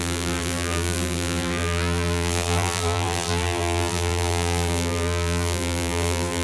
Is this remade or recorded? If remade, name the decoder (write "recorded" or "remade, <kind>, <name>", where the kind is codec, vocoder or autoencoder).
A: remade, vocoder, BigVGAN v2